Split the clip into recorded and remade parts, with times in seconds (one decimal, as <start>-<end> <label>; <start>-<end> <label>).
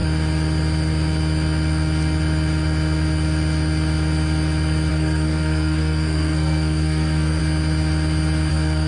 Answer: 0.0-4.9 recorded; 4.9-7.4 remade; 7.4-8.5 recorded; 8.5-8.9 remade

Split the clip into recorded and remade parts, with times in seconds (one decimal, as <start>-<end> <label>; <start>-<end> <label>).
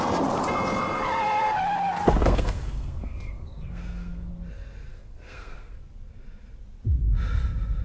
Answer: 0.0-2.2 recorded; 2.2-4.3 remade; 4.3-4.9 recorded; 4.9-5.8 remade; 5.8-7.8 recorded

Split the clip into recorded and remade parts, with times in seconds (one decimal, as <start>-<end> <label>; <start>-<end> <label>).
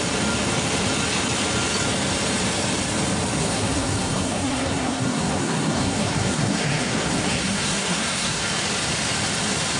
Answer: 0.0-3.4 recorded; 3.4-8.4 remade; 8.4-9.8 recorded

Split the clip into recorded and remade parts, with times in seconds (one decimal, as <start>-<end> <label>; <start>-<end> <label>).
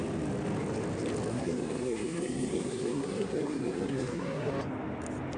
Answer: 0.0-1.3 recorded; 1.3-4.5 remade; 4.5-5.4 recorded